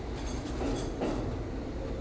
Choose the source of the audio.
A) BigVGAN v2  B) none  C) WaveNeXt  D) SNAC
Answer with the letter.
B